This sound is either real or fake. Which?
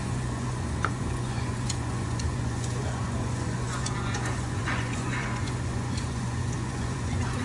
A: fake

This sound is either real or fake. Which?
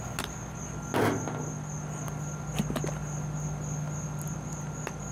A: real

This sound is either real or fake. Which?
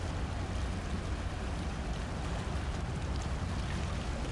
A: real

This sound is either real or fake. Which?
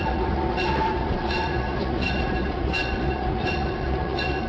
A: fake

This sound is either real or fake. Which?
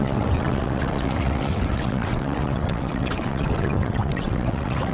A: fake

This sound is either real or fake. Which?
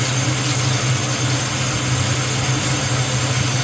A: real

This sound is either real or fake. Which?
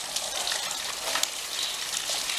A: real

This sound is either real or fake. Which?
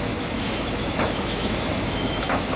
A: fake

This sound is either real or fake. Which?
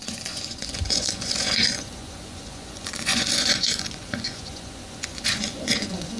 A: fake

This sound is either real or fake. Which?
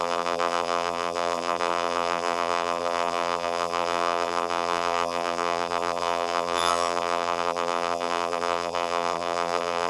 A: fake